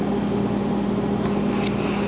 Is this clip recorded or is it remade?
recorded